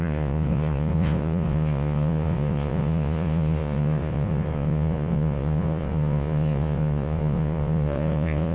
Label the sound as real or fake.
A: fake